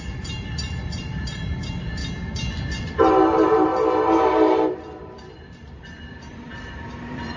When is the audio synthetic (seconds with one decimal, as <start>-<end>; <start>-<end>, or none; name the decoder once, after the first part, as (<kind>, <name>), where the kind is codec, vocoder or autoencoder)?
0.0-2.0 (vocoder, BigVGAN v2); 2.8-7.4